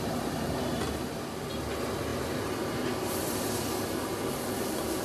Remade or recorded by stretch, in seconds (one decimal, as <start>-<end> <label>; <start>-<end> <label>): 0.0-5.0 recorded